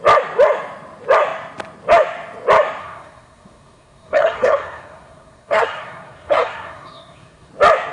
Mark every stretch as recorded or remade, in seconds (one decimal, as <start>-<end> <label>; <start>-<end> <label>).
0.0-2.8 recorded; 2.8-7.5 remade; 7.5-7.9 recorded